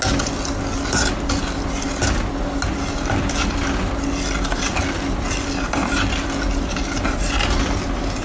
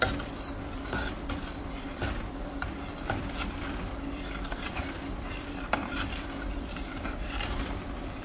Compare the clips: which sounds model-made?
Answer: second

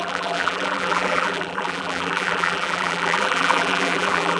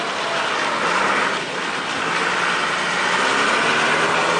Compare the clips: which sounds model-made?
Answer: first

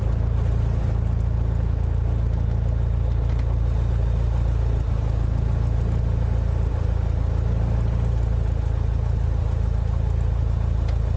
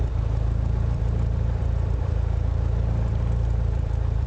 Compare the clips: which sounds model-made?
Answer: second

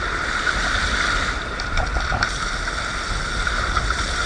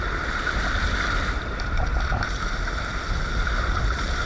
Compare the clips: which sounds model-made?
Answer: second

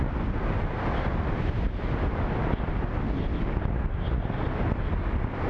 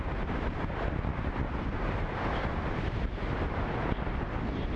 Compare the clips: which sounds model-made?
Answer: second